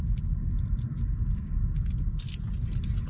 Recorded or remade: recorded